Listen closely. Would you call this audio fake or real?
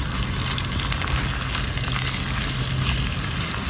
real